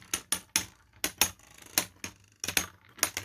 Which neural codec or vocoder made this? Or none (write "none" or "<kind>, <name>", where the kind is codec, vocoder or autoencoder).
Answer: none